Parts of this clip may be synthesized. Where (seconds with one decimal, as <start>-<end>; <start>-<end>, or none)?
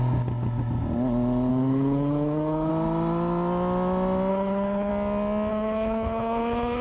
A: 1.5-2.7; 4.3-4.9; 5.5-6.8